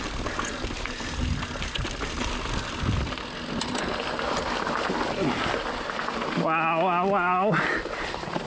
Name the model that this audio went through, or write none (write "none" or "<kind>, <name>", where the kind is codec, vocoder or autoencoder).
none